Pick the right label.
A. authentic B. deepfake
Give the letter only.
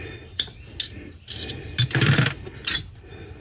A